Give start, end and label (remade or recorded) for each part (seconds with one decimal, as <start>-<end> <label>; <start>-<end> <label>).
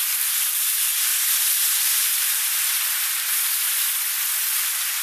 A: 0.0-1.1 recorded; 1.1-4.1 remade; 4.1-5.0 recorded